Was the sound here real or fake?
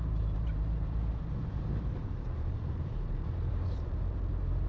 fake